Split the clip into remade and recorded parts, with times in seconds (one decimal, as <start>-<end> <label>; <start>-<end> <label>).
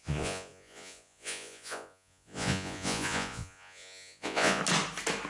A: 0.0-4.6 remade; 4.6-5.3 recorded